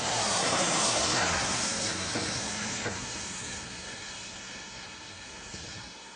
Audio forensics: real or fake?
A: fake